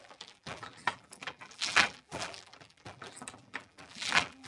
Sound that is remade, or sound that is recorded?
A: remade